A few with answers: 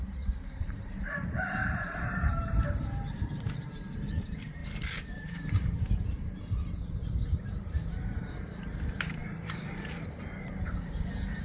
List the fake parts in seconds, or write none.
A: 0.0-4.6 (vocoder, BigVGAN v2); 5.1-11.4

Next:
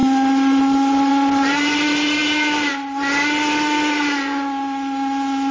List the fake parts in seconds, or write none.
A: none

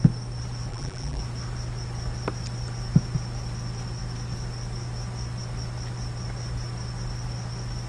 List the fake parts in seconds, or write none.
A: 0.7-1.2 (vocoder, BigVGAN v2)

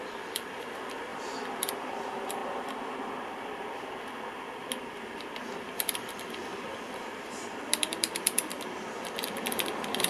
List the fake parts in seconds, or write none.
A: 0.0-2.4 (vocoder, BigVGAN v2); 5.4-6.5; 7.3-10.1

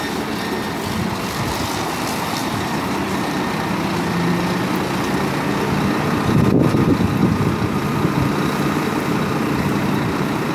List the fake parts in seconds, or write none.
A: 2.4-3.2 (vocoder, BigVGAN v2); 7.2-10.5

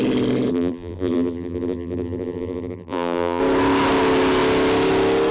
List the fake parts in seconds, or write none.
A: 0.5-3.4 (vocoder, BigVGAN v2)

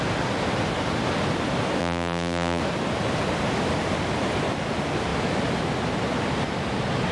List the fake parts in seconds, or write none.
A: 1.8-2.6 (vocoder, BigVGAN v2)

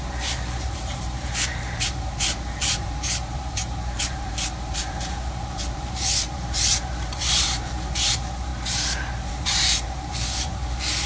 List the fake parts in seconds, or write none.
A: 0.0-8.5 (vocoder, BigVGAN v2); 9.3-11.1